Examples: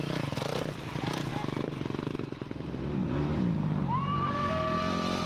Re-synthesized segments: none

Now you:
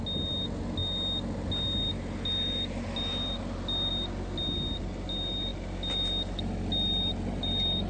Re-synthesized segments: none

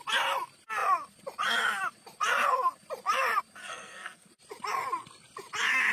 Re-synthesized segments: 3.6-4.3 (codec, SNAC)

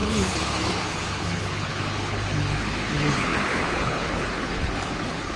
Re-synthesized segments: 0.0-5.4 (codec, HILCodec)

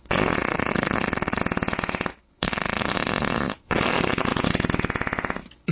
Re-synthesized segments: 0.4-1.4 (vocoder, Vocos); 2.2-3.8

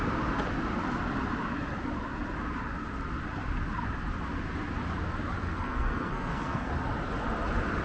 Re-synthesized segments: 5.4-6.7 (codec, SNAC)